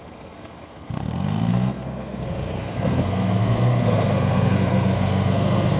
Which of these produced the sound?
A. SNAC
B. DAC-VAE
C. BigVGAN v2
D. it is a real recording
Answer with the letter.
A